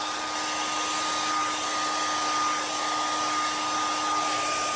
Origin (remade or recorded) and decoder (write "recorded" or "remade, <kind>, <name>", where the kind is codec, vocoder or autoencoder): recorded